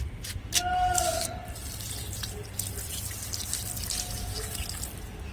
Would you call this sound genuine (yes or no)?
yes